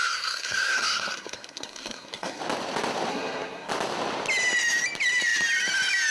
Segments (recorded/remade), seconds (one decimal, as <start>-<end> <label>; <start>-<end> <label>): 0.0-2.4 remade; 2.4-3.1 recorded; 3.1-3.7 remade; 3.7-6.1 recorded